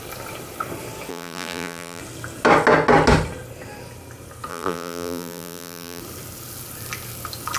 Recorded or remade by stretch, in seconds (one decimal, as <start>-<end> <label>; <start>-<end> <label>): 0.0-1.1 recorded; 1.1-2.0 remade; 2.0-4.5 recorded; 4.5-6.0 remade; 6.0-7.6 recorded